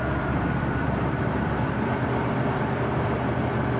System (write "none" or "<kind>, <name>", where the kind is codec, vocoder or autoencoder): vocoder, BigVGAN v2